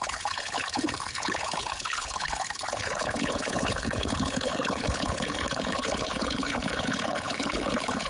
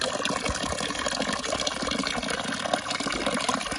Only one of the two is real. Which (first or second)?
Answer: second